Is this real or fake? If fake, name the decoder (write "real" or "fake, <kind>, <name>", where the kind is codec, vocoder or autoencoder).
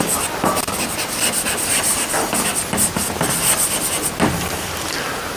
real